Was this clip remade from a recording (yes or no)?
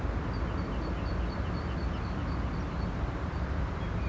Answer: no